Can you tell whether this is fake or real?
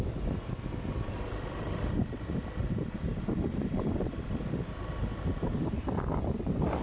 real